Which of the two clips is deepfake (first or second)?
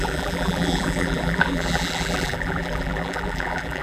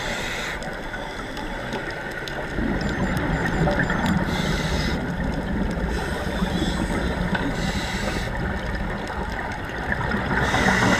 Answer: first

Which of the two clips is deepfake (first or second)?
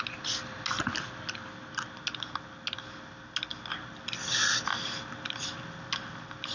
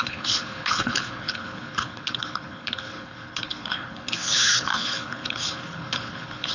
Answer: second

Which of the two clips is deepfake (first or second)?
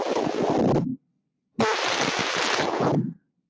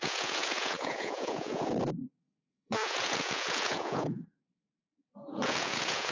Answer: second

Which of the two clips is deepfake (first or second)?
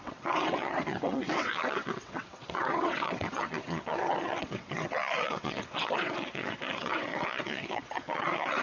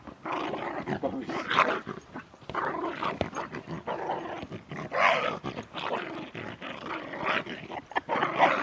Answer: first